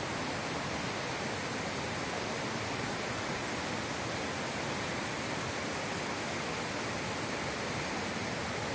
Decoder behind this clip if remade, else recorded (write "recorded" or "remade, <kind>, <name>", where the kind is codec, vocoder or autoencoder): recorded